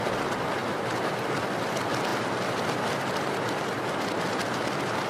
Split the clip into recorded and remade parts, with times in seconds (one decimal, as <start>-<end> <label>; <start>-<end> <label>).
0.0-2.1 recorded; 2.1-3.6 remade; 3.6-5.1 recorded